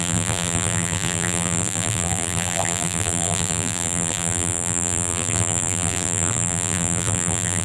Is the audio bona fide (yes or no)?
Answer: no